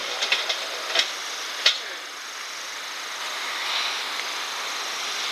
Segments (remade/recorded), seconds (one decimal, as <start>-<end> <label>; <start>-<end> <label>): 0.0-5.3 recorded